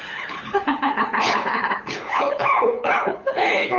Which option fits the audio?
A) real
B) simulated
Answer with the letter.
B